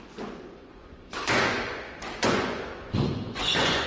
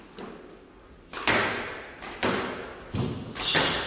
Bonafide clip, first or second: second